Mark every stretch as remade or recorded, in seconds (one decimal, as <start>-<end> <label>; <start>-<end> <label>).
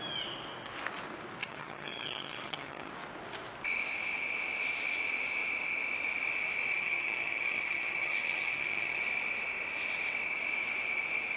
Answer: 0.0-1.4 recorded; 1.4-2.9 remade; 2.9-6.7 recorded; 6.7-9.0 remade; 9.0-11.4 recorded